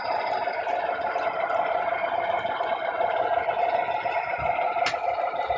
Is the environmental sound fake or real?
real